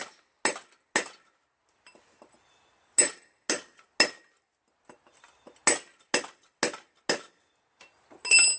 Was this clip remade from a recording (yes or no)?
no